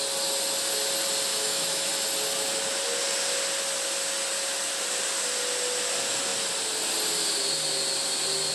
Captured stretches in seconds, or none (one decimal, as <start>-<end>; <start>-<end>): 0.0-1.3; 1.9-8.5

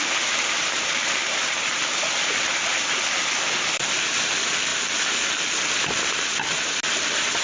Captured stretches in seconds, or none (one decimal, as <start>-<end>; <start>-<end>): 0.0-7.4

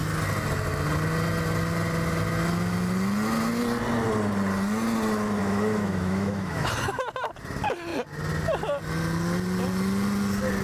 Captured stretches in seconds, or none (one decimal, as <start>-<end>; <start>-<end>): 0.0-5.4; 6.7-10.6

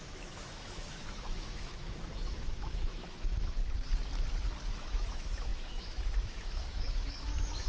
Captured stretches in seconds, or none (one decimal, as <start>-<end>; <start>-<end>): 3.6-4.7